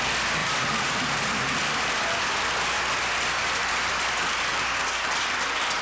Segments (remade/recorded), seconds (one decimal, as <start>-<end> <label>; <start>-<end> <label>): 0.0-0.4 recorded; 0.4-3.9 remade; 3.9-5.8 recorded